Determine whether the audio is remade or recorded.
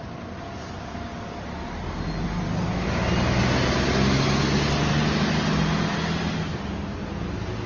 recorded